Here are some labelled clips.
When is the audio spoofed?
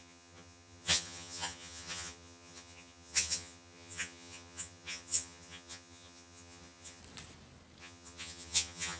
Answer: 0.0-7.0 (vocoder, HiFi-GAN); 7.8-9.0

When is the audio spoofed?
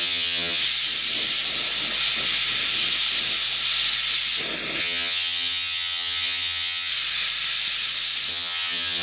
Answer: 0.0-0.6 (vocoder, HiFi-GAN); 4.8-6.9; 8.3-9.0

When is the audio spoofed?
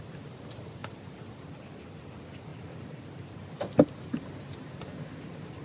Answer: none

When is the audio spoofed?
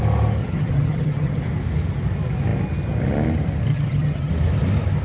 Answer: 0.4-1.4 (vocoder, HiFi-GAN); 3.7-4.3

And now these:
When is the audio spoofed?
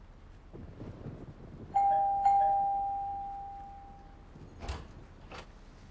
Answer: none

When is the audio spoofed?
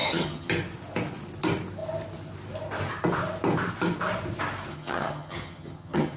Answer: 0.0-0.5 (vocoder, HiFi-GAN); 4.7-6.2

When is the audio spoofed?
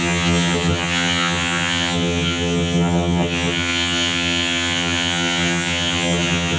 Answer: 0.0-6.6 (vocoder, HiFi-GAN)